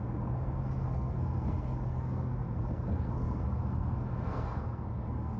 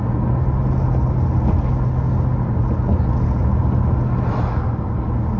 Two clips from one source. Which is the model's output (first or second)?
first